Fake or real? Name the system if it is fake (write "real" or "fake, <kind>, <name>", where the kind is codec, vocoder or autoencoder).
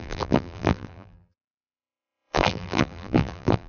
fake, vocoder, BigVGAN v2